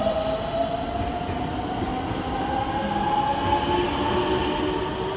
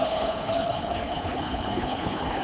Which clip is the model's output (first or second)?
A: second